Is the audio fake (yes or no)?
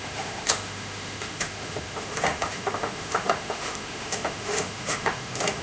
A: yes